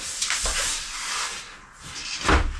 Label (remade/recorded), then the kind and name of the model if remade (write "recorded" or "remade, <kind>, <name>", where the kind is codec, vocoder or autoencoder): recorded